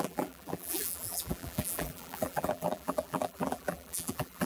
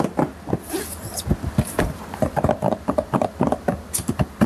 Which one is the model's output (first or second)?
first